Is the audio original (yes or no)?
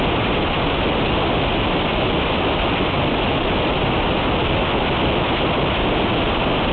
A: yes